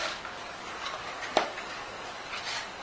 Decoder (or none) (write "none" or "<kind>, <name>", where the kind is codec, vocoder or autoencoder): codec, DAC